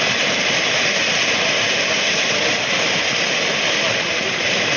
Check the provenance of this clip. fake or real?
real